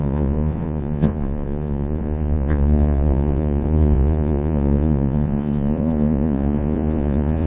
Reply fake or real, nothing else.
fake